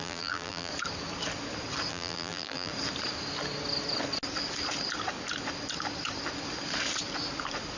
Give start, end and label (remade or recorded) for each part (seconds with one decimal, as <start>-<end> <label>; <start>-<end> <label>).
0.0-0.7 remade; 0.7-1.9 recorded; 1.9-2.7 remade; 2.7-7.8 recorded